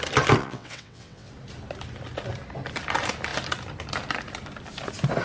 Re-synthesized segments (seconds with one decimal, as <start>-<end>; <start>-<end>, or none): 0.4-1.3